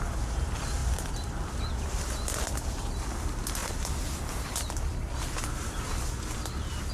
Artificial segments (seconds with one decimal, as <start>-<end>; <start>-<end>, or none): none